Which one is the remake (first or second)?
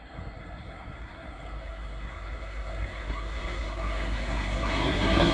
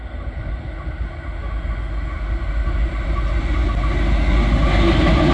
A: first